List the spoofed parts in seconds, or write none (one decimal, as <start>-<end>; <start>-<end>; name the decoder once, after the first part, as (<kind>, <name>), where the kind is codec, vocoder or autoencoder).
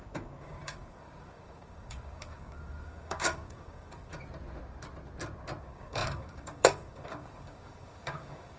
0.0-4.1 (codec, DAC); 5.6-8.6